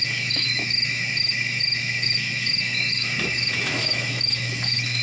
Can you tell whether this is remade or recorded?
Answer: remade